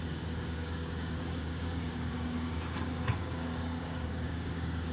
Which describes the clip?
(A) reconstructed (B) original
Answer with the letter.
A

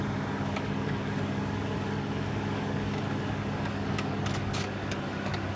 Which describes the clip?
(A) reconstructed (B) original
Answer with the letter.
A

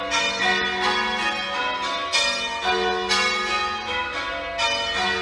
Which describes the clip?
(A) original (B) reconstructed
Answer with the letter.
A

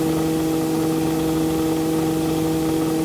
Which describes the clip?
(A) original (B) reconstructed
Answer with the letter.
A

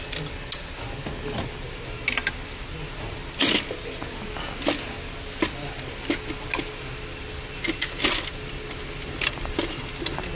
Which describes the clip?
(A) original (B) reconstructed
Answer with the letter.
A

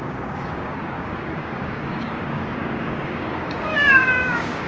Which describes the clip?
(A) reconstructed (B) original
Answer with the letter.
A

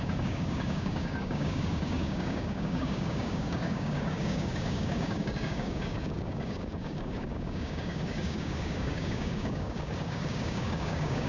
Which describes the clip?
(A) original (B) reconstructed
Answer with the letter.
B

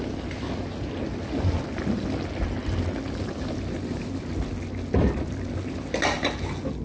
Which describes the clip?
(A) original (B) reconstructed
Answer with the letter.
A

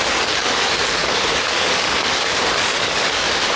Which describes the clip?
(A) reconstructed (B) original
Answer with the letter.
A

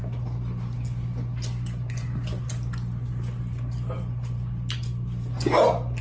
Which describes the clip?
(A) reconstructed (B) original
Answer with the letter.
B